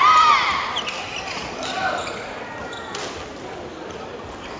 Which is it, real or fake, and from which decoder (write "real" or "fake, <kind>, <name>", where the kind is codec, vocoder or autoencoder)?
real